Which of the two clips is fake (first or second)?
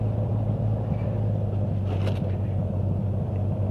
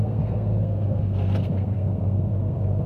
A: second